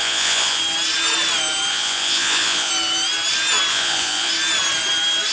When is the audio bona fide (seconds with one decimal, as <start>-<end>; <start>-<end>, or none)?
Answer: 0.6-1.7; 2.7-3.7; 4.3-5.3